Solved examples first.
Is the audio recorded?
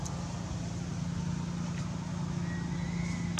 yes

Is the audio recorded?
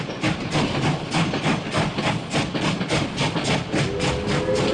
yes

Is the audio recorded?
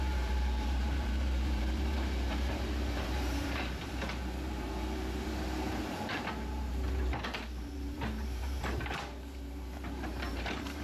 no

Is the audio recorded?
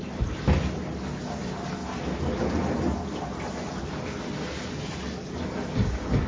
yes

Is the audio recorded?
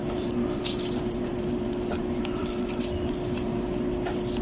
no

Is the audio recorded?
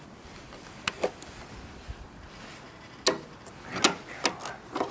yes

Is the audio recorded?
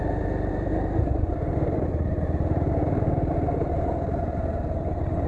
no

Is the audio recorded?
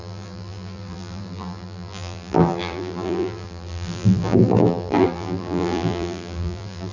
no